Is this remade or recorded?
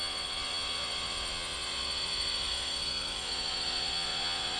remade